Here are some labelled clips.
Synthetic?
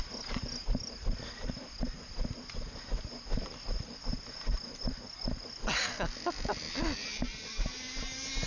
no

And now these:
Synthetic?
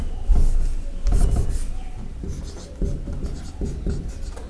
no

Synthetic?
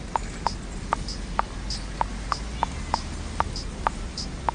no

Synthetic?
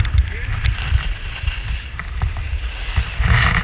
no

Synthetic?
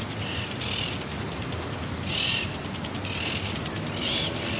no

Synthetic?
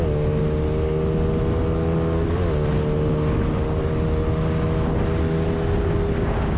no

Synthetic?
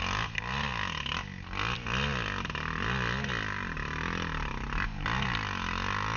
no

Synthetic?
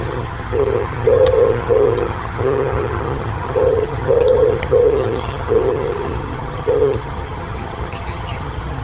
yes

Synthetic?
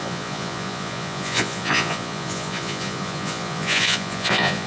yes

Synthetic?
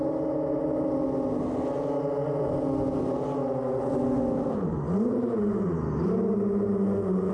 no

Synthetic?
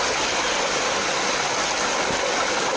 no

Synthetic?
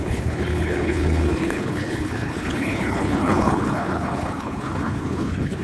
yes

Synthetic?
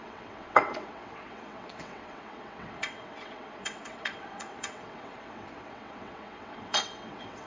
yes